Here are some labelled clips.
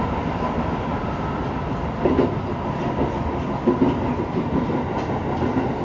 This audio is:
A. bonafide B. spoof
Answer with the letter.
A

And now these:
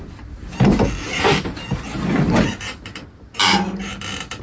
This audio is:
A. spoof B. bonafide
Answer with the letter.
B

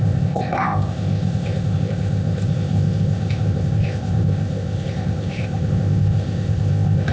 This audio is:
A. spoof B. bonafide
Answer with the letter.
A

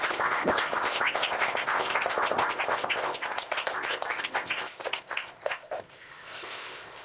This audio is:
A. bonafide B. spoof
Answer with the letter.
B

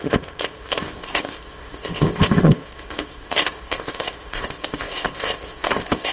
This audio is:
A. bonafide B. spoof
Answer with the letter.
B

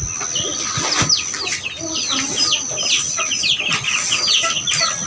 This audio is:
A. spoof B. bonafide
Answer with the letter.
B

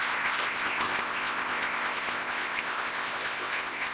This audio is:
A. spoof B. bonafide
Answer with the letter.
A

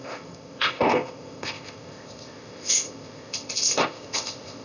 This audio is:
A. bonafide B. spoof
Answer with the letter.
B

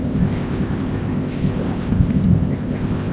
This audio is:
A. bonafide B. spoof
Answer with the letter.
B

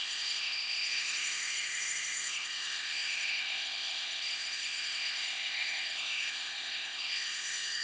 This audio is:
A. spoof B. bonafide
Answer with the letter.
A